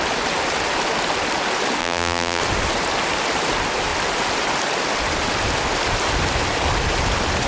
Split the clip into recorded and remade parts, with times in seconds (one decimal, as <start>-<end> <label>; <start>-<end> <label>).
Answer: 0.0-1.8 recorded; 1.8-2.4 remade; 2.4-7.5 recorded